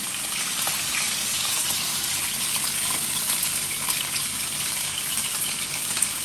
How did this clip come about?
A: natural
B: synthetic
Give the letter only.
B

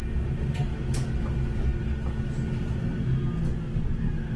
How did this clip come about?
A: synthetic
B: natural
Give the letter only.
B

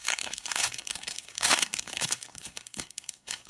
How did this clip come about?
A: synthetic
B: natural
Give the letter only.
A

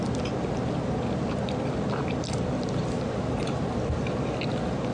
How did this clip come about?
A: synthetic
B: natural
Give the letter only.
B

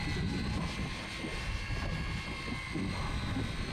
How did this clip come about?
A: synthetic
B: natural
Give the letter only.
B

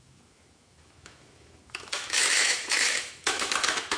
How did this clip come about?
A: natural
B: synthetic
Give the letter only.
B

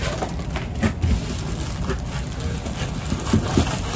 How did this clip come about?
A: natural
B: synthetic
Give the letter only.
A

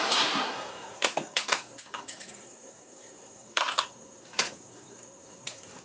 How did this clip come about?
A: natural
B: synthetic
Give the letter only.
B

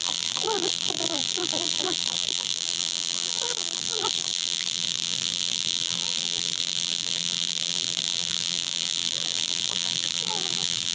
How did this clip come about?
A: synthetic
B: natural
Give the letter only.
A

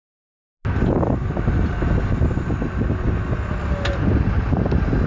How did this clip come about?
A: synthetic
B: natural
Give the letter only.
B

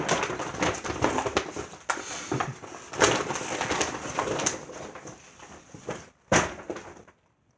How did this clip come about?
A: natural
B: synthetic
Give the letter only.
B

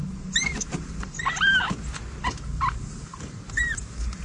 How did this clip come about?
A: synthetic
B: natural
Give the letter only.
A